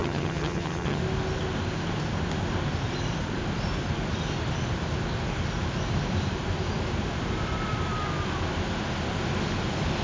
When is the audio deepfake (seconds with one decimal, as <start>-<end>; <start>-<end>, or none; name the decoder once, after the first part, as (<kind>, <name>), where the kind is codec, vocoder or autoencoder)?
0.0-1.0 (vocoder, HiFi-GAN)